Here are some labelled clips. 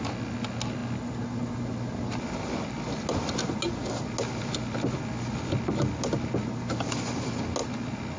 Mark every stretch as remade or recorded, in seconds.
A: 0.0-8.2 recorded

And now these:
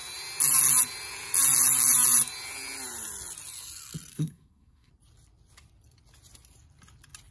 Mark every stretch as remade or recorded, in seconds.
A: 0.0-4.1 recorded; 4.1-4.9 remade; 4.9-7.3 recorded

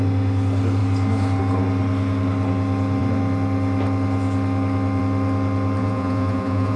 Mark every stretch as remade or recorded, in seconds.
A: 0.0-5.8 recorded; 5.8-6.8 remade

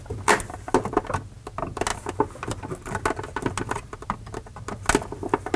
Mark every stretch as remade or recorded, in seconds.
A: 0.0-5.6 recorded

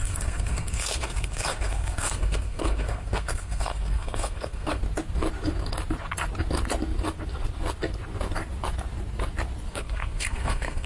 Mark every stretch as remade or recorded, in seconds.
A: 0.0-4.8 remade; 4.8-9.7 recorded; 9.7-10.9 remade

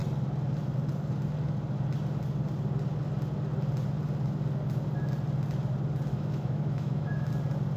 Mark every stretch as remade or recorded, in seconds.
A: 0.0-6.1 recorded; 6.1-7.3 remade; 7.3-7.8 recorded